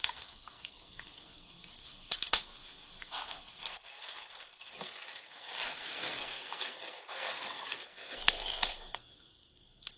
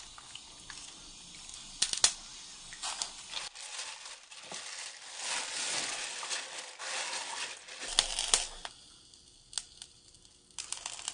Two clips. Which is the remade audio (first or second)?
first